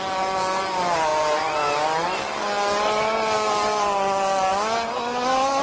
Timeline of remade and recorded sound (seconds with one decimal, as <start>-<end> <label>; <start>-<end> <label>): 0.0-5.6 recorded